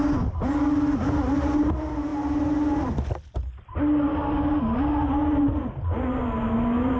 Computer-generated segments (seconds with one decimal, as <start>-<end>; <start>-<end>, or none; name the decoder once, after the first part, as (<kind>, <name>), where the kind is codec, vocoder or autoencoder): none